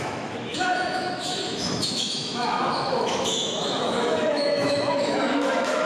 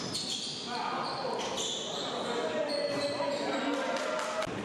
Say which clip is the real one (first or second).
second